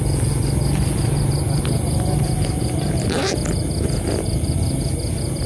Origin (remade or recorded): recorded